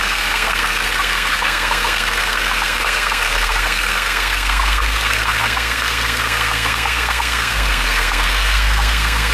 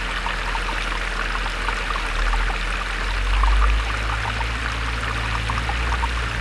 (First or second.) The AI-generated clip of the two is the first